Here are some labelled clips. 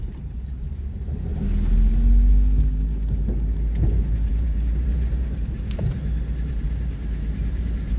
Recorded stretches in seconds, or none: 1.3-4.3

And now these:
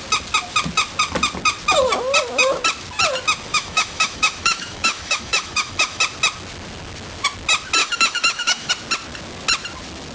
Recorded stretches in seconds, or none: 0.0-3.5; 6.0-7.8; 8.7-10.1

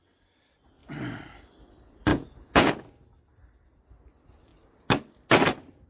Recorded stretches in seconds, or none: 0.0-2.1; 2.7-5.9

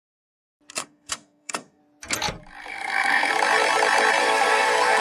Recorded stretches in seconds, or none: 0.0-0.8; 1.8-2.7; 3.3-4.2

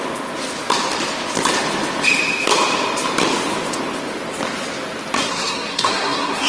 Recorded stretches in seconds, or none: 0.0-5.2

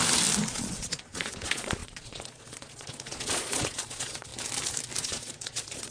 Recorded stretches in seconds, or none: 0.0-0.5; 4.3-5.0